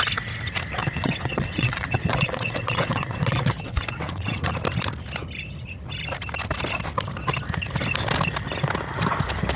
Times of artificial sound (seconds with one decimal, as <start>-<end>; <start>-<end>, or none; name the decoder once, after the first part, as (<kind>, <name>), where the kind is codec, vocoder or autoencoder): 0.8-4.5 (vocoder, WaveNeXt)